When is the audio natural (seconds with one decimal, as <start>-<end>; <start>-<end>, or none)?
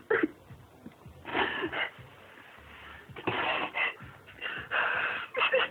0.0-1.3; 1.9-5.7